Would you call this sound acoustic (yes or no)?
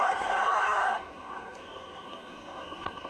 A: no